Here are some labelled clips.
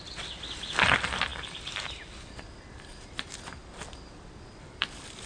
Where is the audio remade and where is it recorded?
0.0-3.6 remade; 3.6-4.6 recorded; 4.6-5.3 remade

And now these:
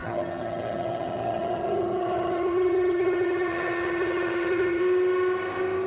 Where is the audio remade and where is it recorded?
0.0-4.8 remade; 4.8-5.9 recorded

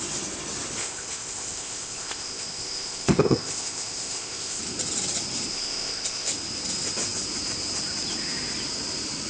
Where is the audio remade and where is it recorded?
0.0-0.8 recorded; 0.8-4.6 remade; 4.6-5.5 recorded; 5.5-6.3 remade; 6.3-9.3 recorded

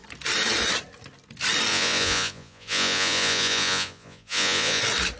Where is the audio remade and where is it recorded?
0.0-1.7 recorded; 1.7-4.8 remade; 4.8-5.2 recorded

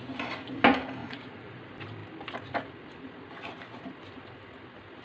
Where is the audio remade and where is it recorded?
0.0-1.0 recorded; 1.0-1.6 remade; 1.6-5.0 recorded